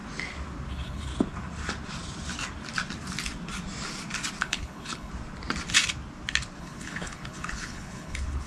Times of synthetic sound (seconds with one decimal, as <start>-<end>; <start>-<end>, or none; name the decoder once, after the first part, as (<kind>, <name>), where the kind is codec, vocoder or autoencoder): 0.7-1.1 (codec, HILCodec); 4.4-5.1; 6.6-8.5